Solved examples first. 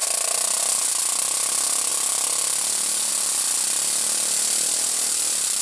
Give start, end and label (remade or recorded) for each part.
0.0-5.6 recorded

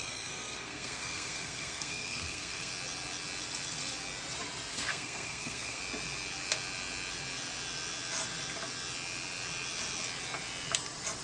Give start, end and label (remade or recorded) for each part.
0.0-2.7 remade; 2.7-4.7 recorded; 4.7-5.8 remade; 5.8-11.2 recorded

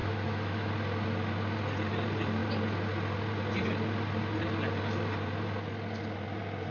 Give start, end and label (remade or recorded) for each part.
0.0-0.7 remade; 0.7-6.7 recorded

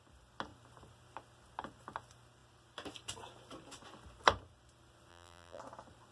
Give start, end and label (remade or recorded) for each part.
0.0-5.1 recorded; 5.1-5.6 remade; 5.6-6.1 recorded

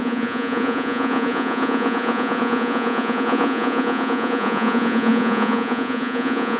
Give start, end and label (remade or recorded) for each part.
0.0-6.6 remade